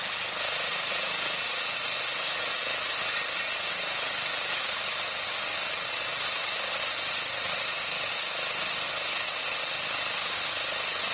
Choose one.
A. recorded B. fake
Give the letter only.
A